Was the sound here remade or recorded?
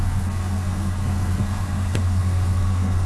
remade